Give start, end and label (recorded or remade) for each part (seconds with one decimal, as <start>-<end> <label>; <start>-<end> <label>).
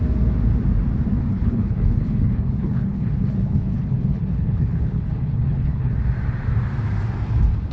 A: 0.0-1.3 recorded; 1.3-5.9 remade; 5.9-7.7 recorded